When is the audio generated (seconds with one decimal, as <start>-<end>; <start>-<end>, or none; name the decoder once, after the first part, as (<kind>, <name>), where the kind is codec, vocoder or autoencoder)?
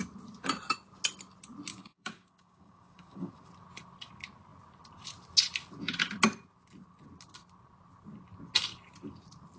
1.7-3.3 (codec, DAC)